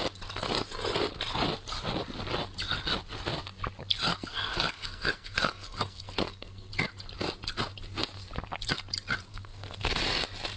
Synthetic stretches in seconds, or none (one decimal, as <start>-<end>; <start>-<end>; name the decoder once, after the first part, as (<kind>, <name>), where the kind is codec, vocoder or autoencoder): 4.1-6.7 (codec, SNAC); 9.3-10.0